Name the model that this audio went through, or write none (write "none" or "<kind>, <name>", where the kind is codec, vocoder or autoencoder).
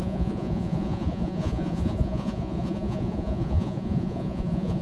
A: vocoder, Vocos